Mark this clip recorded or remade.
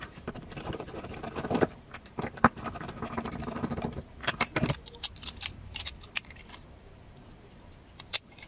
remade